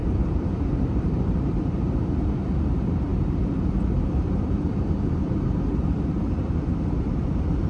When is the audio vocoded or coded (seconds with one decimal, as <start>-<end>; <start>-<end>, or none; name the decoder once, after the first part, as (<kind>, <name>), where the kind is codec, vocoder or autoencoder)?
0.0-7.7 (vocoder, BigVGAN v2)